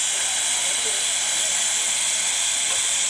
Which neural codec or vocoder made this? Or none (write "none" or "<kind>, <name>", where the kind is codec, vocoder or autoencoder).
none